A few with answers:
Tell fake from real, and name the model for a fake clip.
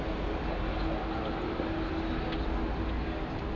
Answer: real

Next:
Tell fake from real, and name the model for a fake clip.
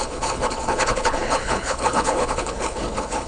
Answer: fake, codec, HILCodec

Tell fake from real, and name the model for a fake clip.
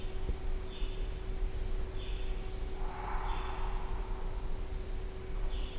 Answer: real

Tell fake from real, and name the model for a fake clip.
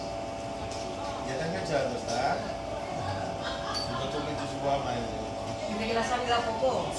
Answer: real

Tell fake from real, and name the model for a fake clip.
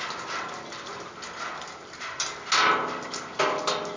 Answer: real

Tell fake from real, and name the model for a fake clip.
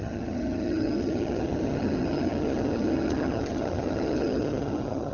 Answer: fake, vocoder, HiFi-GAN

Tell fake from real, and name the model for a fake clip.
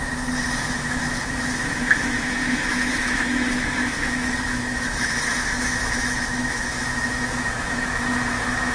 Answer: fake, autoencoder, DAC-VAE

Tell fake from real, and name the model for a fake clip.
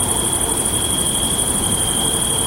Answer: real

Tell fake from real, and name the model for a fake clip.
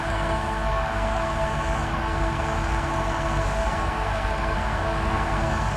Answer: fake, codec, SNAC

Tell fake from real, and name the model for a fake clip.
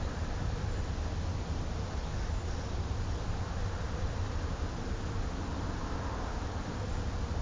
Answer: real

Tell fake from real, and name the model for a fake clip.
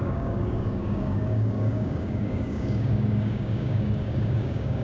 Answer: fake, codec, DAC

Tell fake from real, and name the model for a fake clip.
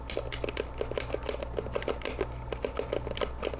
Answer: real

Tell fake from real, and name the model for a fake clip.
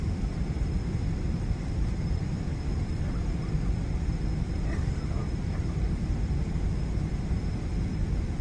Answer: fake, vocoder, BigVGAN v2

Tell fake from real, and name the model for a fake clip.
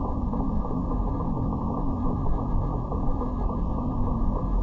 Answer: fake, vocoder, BigVGAN v2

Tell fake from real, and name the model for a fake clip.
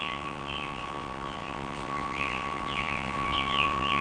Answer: fake, vocoder, WaveNeXt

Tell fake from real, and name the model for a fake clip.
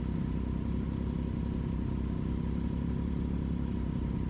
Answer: real